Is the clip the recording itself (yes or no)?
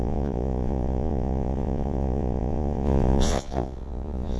no